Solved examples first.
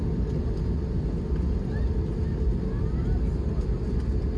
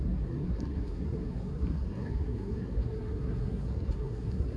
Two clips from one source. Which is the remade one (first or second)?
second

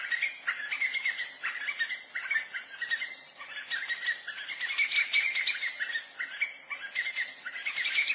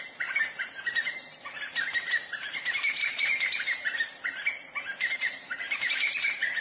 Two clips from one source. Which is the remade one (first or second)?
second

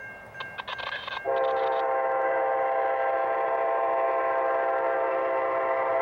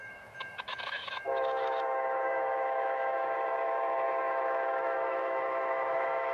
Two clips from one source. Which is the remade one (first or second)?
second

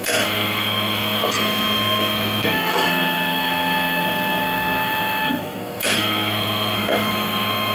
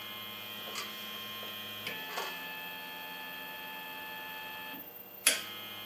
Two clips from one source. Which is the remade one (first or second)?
first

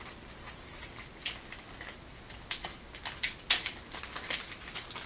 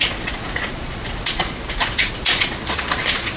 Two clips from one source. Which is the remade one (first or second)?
second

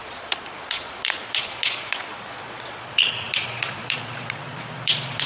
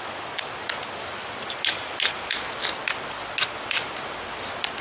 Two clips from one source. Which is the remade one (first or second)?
first